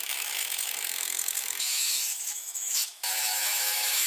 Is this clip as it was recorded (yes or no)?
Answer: no